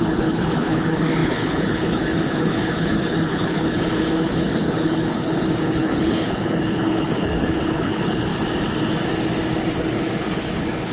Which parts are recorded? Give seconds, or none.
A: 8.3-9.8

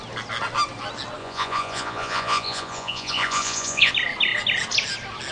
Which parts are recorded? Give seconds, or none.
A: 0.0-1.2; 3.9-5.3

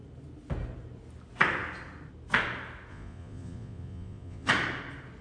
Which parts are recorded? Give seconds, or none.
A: 0.0-2.9; 4.5-5.2

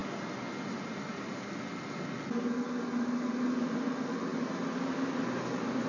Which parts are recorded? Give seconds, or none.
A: 0.0-5.9